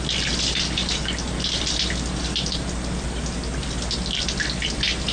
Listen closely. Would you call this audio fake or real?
real